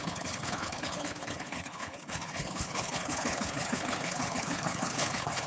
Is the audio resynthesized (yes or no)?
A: yes